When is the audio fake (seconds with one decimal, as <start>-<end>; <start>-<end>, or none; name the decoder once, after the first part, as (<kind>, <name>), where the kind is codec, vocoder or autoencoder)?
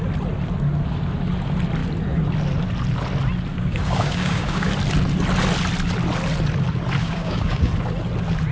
3.5-4.7 (codec, DAC); 7.0-7.7